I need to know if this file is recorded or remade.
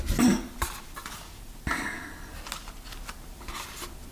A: recorded